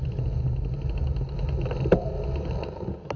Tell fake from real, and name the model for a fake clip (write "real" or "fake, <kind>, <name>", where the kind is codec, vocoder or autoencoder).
real